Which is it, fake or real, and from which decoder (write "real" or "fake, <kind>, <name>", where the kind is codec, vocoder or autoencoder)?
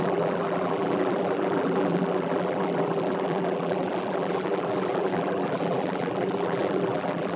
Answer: fake, vocoder, BigVGAN v2